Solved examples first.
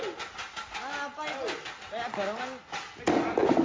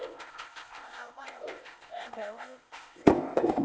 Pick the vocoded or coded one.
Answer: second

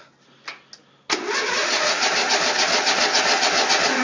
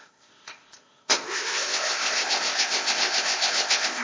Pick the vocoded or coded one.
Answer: second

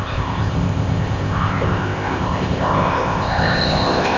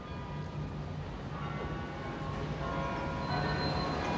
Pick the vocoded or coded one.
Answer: first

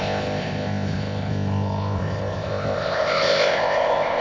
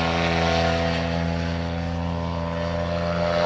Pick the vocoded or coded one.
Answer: first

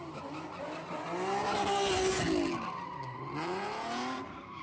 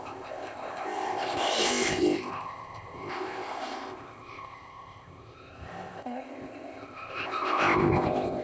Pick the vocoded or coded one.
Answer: second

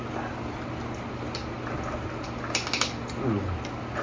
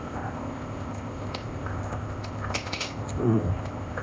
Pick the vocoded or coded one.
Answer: second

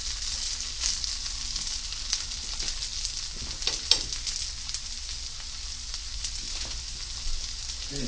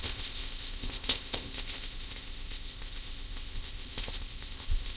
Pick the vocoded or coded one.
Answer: second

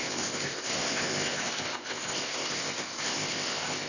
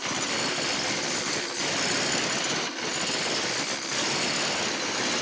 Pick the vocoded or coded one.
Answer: first